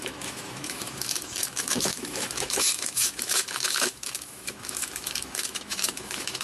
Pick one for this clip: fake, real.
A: fake